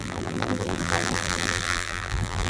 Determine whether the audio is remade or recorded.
remade